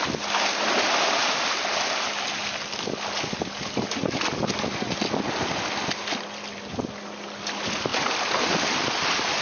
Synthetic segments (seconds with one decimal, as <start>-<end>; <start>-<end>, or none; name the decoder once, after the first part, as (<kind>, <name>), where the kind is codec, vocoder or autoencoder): none